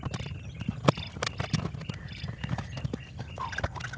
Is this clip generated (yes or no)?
no